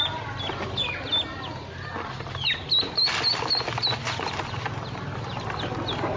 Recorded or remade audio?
recorded